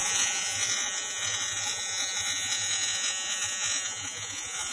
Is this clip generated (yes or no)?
yes